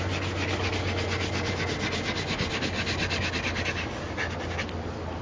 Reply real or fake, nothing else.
real